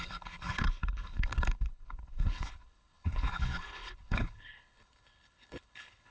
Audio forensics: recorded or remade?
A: remade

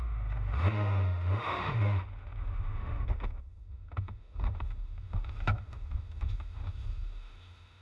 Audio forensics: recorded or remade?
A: remade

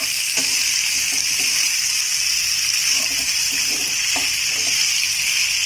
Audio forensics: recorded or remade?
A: recorded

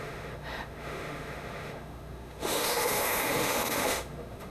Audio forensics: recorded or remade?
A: remade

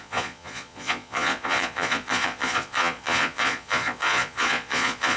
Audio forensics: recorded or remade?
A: remade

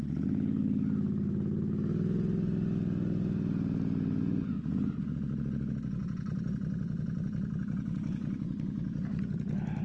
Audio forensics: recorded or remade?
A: recorded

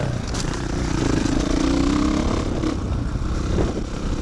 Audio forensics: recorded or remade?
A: recorded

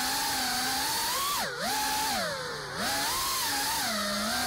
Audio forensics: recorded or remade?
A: recorded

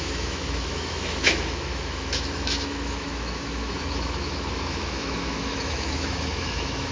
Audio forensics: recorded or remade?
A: remade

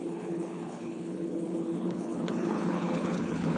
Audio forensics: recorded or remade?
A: remade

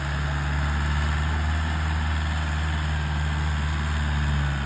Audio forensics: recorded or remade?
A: recorded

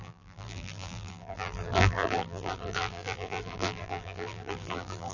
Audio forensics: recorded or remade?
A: remade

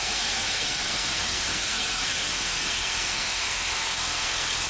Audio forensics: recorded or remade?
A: remade